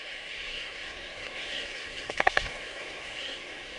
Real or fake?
fake